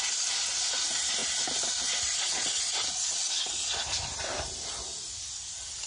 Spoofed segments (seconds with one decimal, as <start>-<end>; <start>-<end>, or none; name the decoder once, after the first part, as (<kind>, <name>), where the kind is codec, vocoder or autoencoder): none